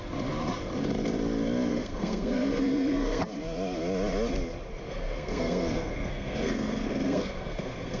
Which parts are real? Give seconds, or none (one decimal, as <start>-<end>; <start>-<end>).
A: 0.0-1.7; 3.2-4.7